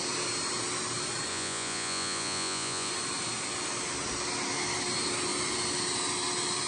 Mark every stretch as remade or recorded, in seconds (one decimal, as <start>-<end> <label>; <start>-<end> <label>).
0.0-1.3 recorded; 1.3-2.9 remade; 2.9-6.7 recorded